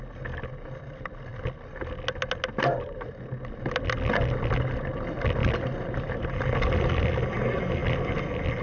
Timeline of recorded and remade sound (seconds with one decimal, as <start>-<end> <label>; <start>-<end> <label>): 0.0-2.7 recorded; 2.7-3.2 remade; 3.2-5.4 recorded; 5.4-6.4 remade; 6.4-8.6 recorded